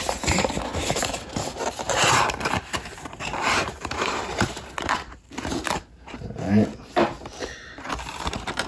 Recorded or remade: remade